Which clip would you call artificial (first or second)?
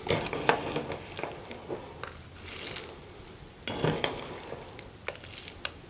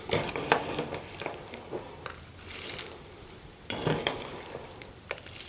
second